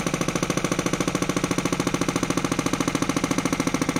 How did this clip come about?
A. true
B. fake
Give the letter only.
A